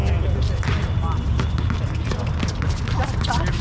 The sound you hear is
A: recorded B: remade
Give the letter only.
A